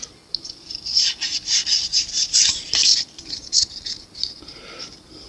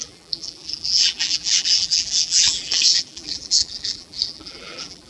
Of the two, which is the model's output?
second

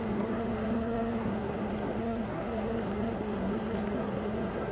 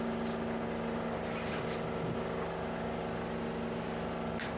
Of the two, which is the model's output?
first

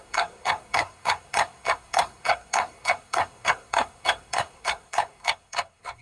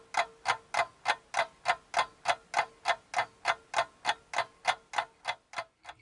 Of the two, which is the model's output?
first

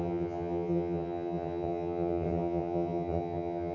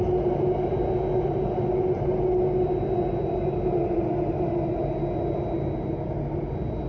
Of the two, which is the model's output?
first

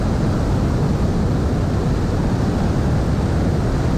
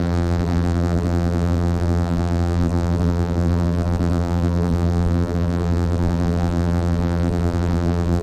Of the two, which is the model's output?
second